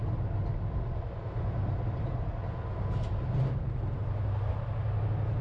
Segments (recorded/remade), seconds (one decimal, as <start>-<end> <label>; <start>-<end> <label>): 0.0-5.4 recorded